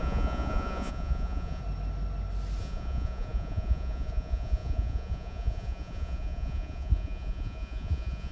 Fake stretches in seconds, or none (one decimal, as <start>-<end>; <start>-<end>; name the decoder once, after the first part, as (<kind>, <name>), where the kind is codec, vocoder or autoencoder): 0.0-1.6 (vocoder, Vocos); 2.6-8.3